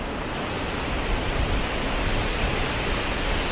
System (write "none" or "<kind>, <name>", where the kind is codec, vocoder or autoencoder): none